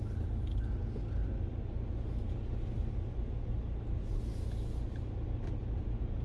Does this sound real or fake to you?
real